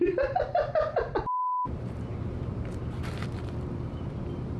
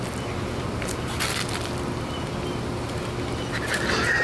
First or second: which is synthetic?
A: first